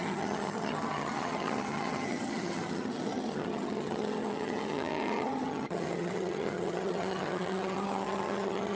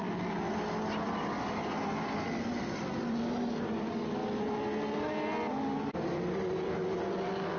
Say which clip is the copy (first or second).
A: first